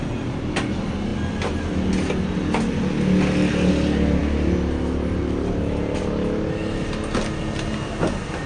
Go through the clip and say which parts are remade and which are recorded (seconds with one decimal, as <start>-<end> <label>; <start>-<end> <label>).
0.0-8.5 recorded